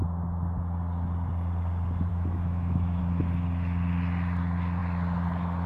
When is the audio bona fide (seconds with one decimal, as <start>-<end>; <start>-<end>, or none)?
0.0-2.1; 3.0-5.7